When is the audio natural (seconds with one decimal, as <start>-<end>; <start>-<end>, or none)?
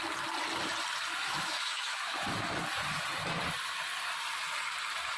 0.0-1.2; 2.4-5.2